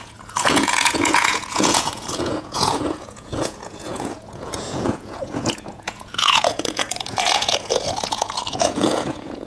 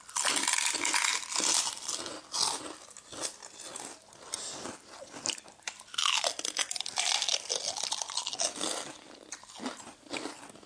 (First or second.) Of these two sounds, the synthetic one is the first